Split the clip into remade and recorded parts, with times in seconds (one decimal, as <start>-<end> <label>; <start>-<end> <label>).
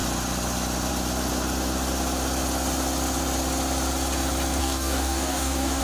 0.0-4.6 recorded; 4.6-5.8 remade